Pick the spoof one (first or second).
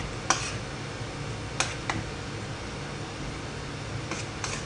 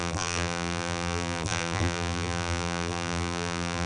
second